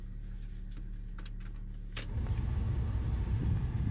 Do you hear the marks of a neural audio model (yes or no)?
no